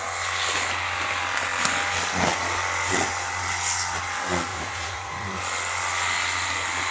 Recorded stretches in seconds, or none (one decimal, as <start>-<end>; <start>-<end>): 0.0-4.5; 5.1-6.9